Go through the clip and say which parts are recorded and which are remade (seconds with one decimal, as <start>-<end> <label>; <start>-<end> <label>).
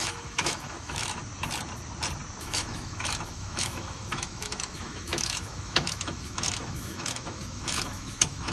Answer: 0.0-1.2 remade; 1.2-2.4 recorded; 2.4-8.5 remade